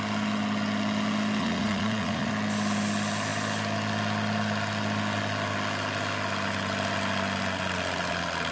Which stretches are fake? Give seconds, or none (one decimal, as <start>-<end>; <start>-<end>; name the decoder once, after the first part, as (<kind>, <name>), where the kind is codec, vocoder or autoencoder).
1.4-2.3 (vocoder, Vocos)